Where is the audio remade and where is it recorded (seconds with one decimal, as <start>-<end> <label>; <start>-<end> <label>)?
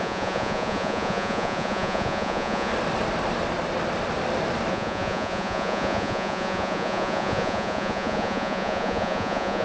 0.0-2.7 remade; 2.7-4.7 recorded; 4.7-9.6 remade